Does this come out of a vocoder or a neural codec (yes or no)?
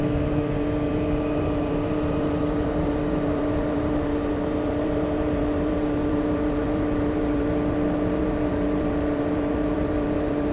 yes